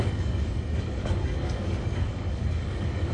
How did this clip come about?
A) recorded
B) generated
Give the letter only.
B